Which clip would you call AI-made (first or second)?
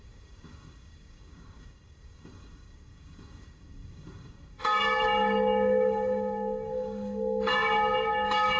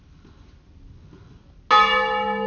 first